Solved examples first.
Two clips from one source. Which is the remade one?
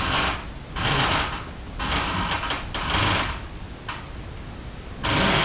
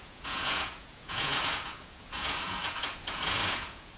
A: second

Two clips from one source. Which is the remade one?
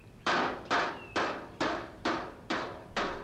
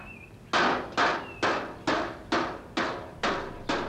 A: first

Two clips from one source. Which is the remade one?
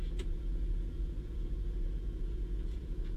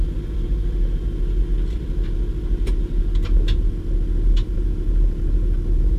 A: first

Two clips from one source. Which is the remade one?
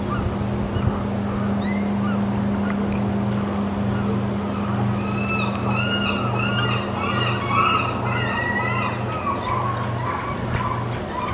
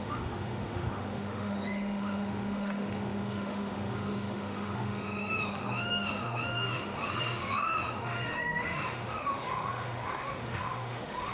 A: second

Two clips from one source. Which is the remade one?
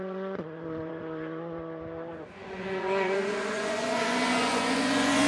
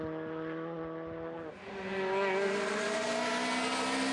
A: first